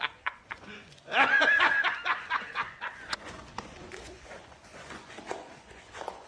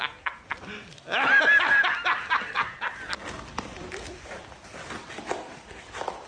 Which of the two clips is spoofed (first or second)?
first